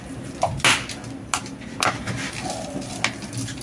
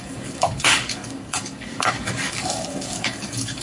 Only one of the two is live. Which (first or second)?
first